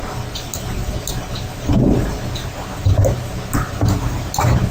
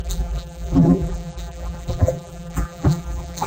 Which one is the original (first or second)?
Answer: first